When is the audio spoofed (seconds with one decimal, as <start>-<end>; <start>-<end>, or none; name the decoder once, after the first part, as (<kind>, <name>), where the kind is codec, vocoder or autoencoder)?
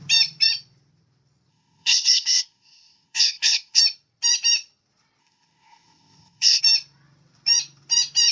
1.5-3.8 (codec, ZipCodec); 5.2-6.6